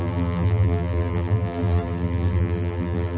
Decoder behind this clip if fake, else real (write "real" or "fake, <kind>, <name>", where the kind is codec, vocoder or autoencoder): fake, vocoder, BigVGAN v2